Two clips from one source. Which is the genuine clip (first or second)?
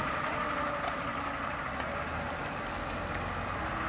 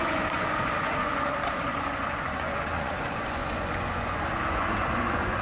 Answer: first